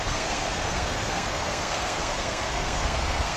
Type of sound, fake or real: fake